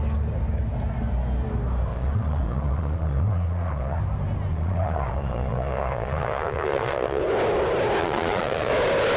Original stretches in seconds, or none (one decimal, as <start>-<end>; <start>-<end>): 0.0-1.9; 4.0-4.5; 7.2-8.0; 8.7-9.2